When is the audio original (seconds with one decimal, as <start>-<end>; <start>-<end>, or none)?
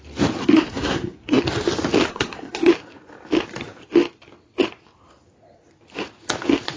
0.0-0.4; 1.4-2.1; 2.7-6.8